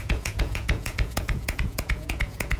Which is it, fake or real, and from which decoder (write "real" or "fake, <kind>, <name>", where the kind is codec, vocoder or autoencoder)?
fake, vocoder, Vocos